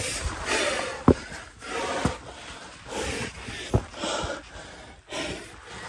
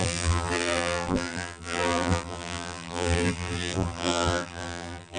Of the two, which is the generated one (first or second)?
second